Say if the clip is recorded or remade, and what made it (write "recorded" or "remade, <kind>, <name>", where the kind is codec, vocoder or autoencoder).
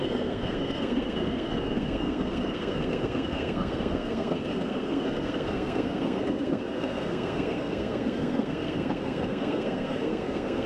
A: remade, codec, SNAC